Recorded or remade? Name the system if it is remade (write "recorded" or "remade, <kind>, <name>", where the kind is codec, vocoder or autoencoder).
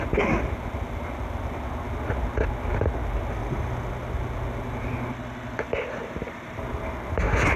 recorded